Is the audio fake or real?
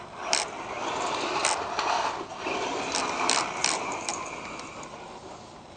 real